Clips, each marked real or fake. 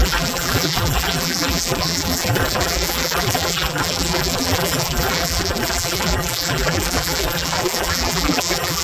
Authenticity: fake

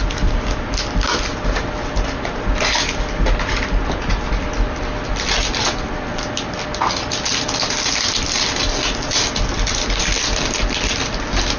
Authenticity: real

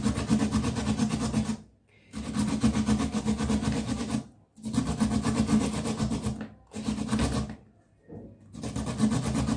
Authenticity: real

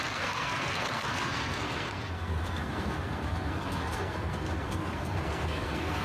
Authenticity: fake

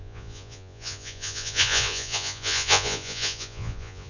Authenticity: fake